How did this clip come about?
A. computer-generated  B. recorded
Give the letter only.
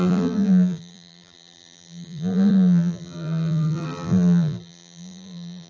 A